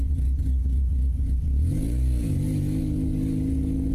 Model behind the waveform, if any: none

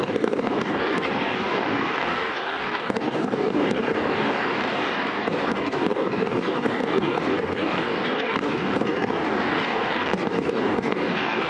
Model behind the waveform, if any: codec, DAC